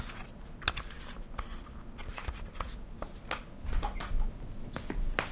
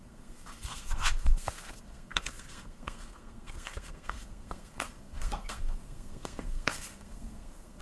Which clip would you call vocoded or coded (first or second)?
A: second